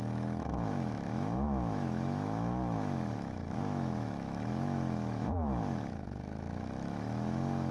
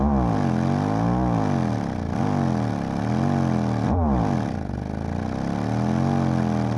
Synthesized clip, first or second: first